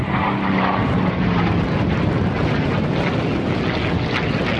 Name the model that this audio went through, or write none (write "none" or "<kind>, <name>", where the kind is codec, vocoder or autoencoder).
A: none